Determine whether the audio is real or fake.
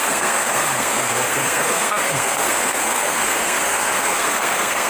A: fake